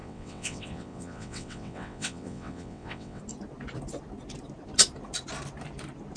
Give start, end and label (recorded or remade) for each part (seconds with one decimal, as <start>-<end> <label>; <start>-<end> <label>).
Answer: 0.0-3.2 remade; 3.2-6.2 recorded